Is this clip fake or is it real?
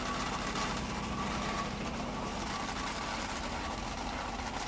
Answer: real